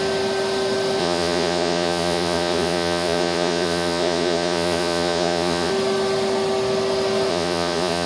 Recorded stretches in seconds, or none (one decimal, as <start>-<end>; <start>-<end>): 0.0-1.0; 5.7-7.3